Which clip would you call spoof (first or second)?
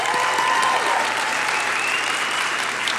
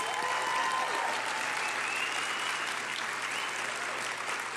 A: first